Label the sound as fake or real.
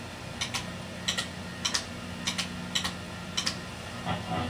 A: real